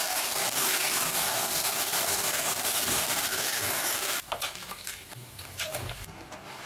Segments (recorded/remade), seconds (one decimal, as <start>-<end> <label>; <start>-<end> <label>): 0.0-6.7 remade